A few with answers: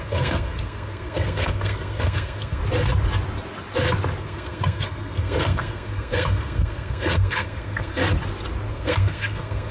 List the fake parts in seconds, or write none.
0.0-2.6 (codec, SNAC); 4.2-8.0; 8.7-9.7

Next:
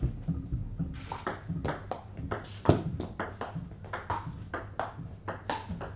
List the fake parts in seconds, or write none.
none

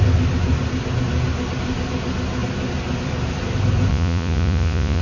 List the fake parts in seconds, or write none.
3.9-5.0 (vocoder, Vocos)

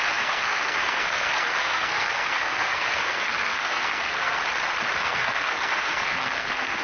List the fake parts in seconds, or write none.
0.0-4.4 (codec, SNAC); 5.0-6.8

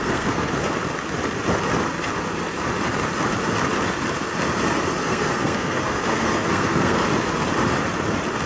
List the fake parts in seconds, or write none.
0.0-0.5 (codec, SNAC); 5.0-7.0

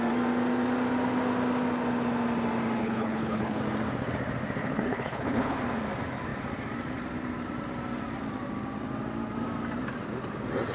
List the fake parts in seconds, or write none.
2.8-3.6 (codec, HILCodec); 4.6-5.6